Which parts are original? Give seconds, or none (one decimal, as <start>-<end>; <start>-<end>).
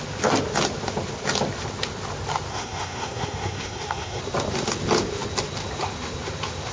0.0-2.5; 4.2-6.7